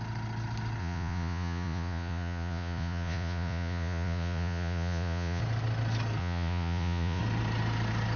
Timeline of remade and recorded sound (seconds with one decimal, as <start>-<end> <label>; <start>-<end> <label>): 0.0-0.8 recorded; 0.8-5.4 remade; 5.4-6.2 recorded; 6.2-7.2 remade; 7.2-8.2 recorded